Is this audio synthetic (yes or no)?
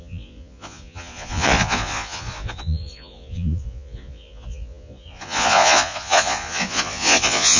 yes